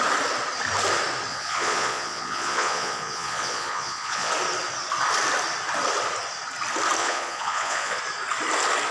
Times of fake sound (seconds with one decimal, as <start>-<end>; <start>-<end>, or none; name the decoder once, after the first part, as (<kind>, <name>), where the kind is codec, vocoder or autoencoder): 1.3-4.3 (vocoder, Vocos); 7.0-8.0